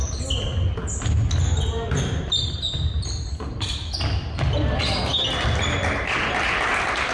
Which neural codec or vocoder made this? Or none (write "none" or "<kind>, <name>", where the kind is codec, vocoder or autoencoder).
none